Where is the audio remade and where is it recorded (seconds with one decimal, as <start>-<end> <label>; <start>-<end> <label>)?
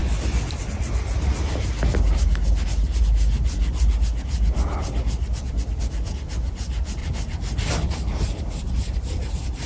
0.0-7.0 recorded; 7.0-9.7 remade